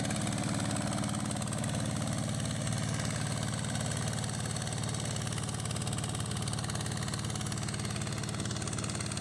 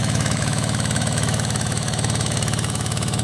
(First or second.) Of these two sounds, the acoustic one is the first